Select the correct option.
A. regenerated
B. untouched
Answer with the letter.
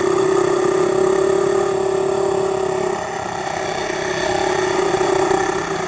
B